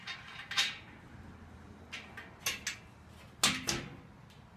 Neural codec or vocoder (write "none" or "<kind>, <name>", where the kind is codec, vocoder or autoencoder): none